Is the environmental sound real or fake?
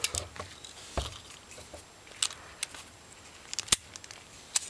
real